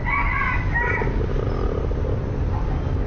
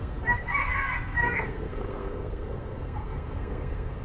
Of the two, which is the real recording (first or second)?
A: first